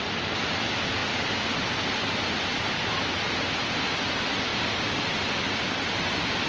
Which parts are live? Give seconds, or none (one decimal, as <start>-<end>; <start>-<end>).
0.0-6.5